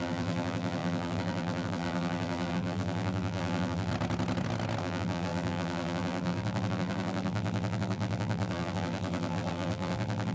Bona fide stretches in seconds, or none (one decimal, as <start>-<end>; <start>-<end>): 3.9-4.8